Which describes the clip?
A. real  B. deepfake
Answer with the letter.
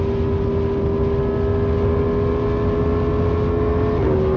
A